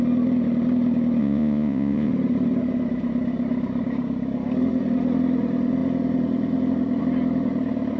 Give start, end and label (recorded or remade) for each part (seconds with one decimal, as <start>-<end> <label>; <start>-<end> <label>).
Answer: 0.0-1.2 recorded; 1.2-2.1 remade; 2.1-8.0 recorded